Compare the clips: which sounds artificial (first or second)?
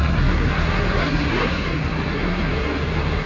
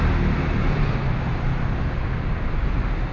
first